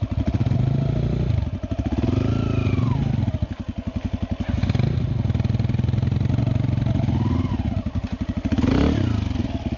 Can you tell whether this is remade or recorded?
recorded